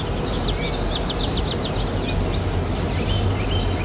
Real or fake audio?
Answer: real